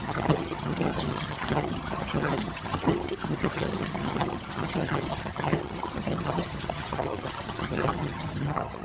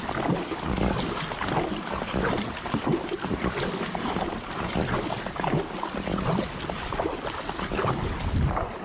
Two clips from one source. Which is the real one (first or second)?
second